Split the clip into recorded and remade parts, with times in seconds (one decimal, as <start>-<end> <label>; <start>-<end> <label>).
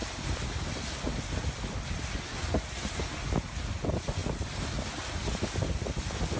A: 0.0-6.4 recorded